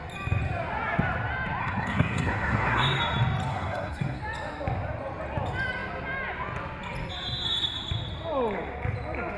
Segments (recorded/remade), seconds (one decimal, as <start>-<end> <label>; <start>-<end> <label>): 0.0-1.6 recorded; 1.6-3.0 remade; 3.0-3.5 recorded; 3.5-4.2 remade; 4.2-9.4 recorded